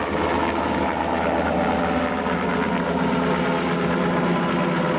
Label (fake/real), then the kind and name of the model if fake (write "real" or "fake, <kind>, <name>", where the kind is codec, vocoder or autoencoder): real